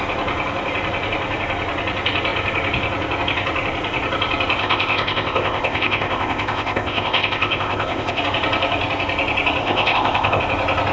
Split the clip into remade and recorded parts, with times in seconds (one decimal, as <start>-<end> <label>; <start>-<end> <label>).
0.0-4.6 recorded; 4.6-8.2 remade; 8.2-9.6 recorded; 9.6-10.4 remade; 10.4-10.9 recorded